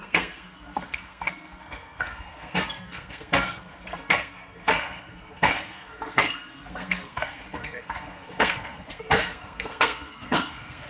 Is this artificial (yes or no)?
yes